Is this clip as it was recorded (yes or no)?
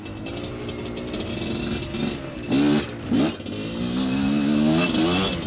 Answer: yes